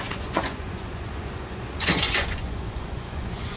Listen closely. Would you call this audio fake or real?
fake